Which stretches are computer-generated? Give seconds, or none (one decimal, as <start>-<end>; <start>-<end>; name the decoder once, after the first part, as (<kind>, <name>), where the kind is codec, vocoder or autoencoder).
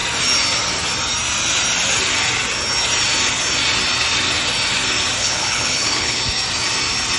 5.2-6.2 (codec, HILCodec)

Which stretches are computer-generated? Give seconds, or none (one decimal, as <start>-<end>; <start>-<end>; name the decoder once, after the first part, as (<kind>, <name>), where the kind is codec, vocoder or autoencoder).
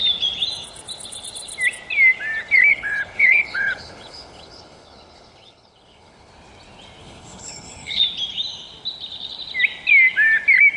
2.7-6.3 (codec, HILCodec); 7.0-8.0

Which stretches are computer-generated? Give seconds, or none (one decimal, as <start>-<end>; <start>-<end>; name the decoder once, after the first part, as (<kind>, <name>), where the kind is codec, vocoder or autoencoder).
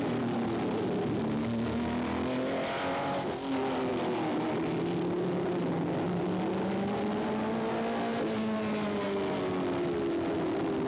none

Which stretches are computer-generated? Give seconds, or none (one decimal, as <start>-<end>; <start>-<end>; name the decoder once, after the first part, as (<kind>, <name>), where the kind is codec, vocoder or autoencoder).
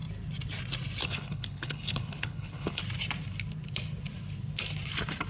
1.0-2.8 (codec, HILCodec)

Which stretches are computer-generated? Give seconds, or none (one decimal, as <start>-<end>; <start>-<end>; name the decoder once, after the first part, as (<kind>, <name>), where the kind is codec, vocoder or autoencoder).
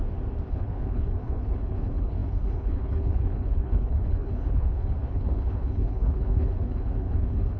0.5-7.6 (codec, HILCodec)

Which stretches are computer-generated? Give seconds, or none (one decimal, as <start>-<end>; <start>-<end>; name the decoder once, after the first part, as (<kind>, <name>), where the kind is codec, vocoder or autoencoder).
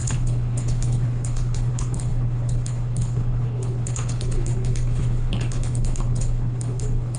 0.0-7.2 (codec, HILCodec)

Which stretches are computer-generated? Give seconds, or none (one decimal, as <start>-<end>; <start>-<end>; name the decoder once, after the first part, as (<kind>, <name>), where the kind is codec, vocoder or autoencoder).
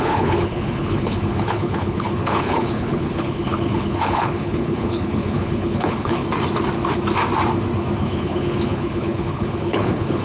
0.0-6.2 (codec, HILCodec); 8.0-10.2